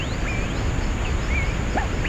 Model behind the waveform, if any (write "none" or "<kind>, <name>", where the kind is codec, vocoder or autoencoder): none